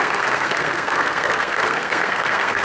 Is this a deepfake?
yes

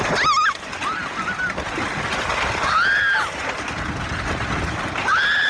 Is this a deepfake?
no